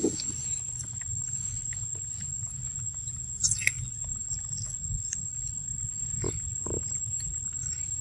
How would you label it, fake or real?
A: real